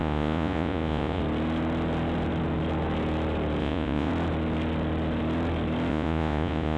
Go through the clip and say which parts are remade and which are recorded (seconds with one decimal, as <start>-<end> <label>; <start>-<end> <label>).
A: 0.0-1.2 remade; 1.2-3.6 recorded; 3.6-4.1 remade; 4.1-5.9 recorded; 5.9-6.8 remade